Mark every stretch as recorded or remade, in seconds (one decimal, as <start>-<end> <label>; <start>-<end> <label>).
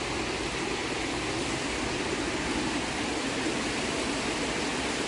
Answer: 0.0-5.1 recorded